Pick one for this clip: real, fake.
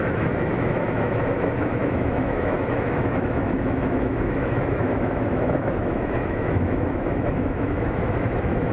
fake